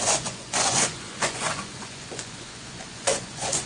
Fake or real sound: fake